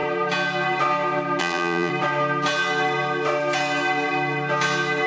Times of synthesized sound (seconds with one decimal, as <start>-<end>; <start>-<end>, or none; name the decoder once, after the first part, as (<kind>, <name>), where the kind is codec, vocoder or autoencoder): 1.4-1.9 (vocoder, BigVGAN v2)